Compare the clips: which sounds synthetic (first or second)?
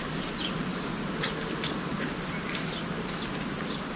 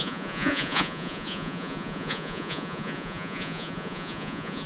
second